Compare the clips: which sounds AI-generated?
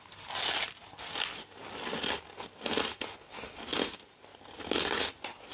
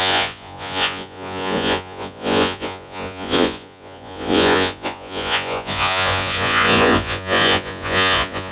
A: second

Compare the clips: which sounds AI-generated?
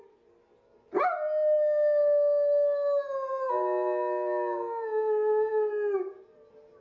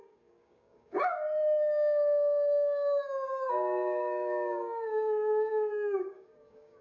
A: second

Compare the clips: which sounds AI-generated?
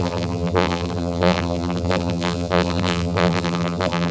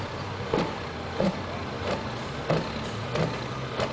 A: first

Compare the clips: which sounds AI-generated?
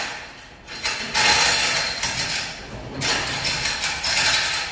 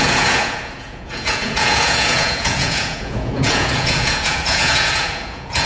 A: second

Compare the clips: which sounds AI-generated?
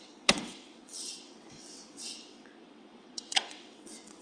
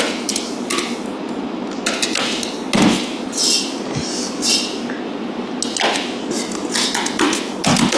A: first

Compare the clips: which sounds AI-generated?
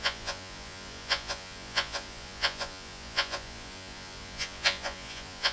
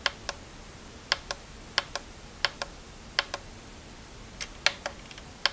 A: first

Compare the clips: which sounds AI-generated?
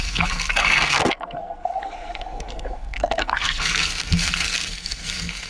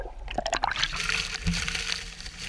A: first